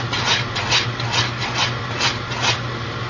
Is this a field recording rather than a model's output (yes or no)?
yes